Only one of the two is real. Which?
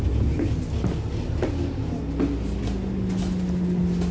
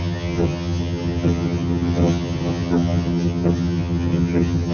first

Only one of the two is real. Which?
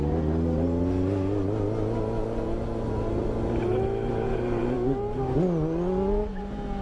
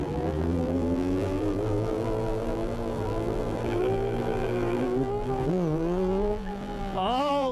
first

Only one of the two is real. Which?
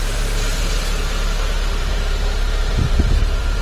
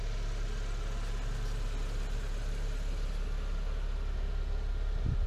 second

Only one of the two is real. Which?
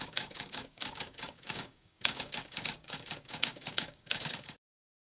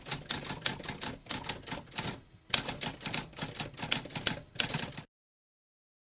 second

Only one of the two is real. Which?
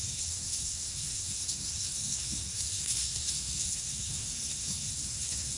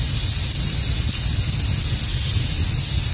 second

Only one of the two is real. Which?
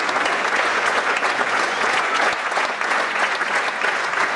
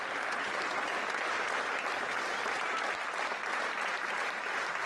second